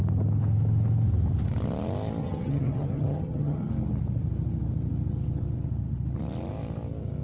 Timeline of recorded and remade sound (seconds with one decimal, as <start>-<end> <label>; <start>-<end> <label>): 0.0-2.2 recorded; 2.2-3.7 remade; 3.7-7.2 recorded